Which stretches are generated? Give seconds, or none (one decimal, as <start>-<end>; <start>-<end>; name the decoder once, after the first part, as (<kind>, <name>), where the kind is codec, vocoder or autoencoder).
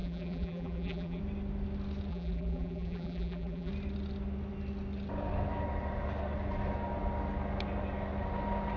0.0-1.2 (vocoder, BigVGAN v2); 2.1-3.7